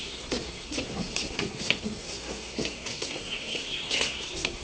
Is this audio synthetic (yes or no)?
yes